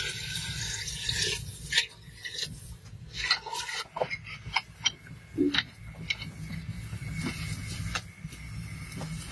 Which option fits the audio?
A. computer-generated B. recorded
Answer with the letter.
B